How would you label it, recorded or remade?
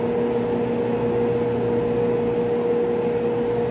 recorded